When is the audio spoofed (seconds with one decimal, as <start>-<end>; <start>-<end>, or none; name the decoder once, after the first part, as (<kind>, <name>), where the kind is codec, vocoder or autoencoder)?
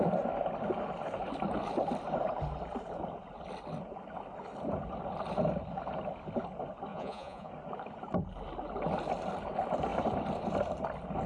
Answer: 6.9-7.5 (vocoder, Vocos)